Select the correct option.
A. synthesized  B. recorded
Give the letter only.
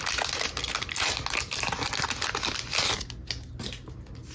B